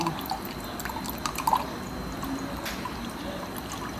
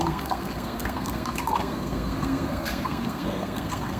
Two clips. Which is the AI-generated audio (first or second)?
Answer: second